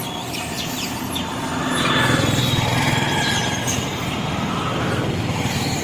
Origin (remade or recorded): recorded